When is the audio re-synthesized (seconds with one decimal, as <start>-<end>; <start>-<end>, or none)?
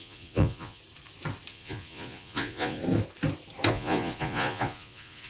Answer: 0.0-0.8; 1.5-2.8; 3.7-5.3